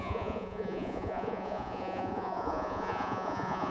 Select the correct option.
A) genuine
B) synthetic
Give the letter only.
B